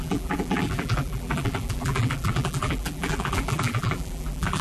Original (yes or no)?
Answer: no